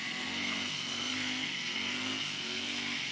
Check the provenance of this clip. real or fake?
fake